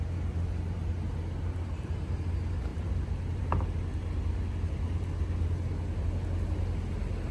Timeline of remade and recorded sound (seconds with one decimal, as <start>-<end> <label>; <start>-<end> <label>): 0.0-2.7 recorded; 2.7-3.5 remade; 3.5-7.3 recorded